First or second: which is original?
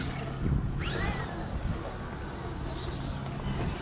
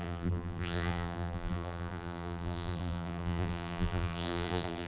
first